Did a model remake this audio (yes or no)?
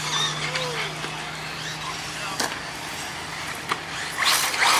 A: no